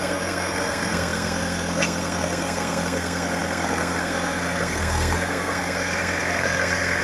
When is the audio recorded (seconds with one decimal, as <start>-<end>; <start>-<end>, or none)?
none

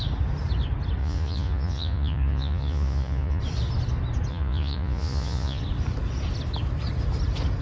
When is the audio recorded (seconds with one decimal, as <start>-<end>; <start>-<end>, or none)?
0.0-1.0; 3.4-4.3; 5.6-7.6

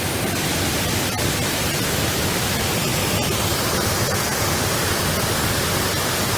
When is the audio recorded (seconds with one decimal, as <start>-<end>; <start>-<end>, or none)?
0.0-6.4